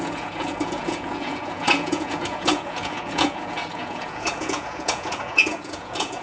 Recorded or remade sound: remade